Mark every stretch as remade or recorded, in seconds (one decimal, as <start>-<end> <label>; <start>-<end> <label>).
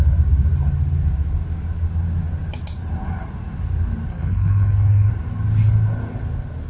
0.0-4.1 recorded; 4.1-5.1 remade; 5.1-6.7 recorded